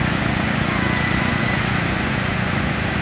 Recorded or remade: remade